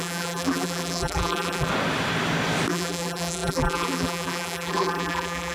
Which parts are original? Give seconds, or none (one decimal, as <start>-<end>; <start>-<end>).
1.7-2.7